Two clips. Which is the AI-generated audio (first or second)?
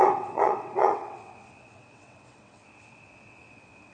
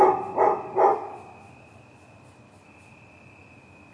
first